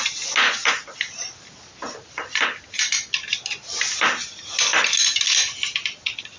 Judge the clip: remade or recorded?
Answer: recorded